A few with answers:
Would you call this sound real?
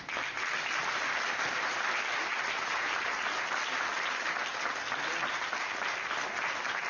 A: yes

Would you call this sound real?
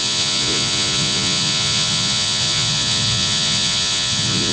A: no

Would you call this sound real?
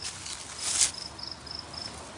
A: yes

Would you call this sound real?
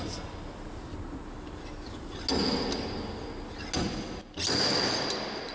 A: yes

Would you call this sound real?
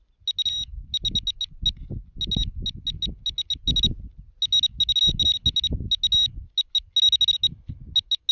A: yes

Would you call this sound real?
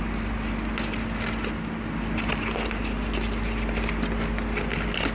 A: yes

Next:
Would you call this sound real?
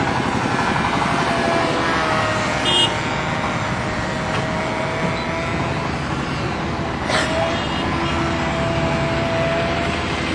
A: yes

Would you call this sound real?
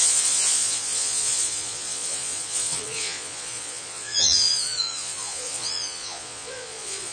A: no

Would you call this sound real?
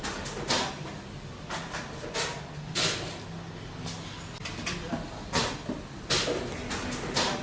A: yes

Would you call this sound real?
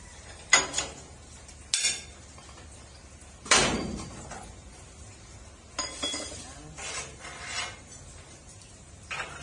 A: yes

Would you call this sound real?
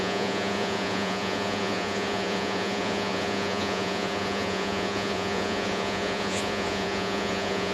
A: no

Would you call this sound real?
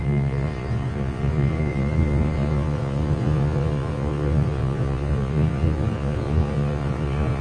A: no